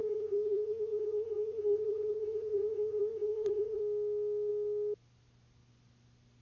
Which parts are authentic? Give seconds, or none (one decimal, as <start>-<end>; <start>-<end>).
3.8-6.4